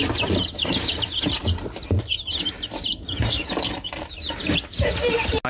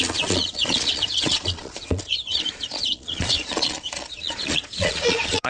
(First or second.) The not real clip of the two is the second